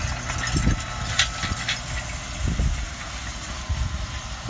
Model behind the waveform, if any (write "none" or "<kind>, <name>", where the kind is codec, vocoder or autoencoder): none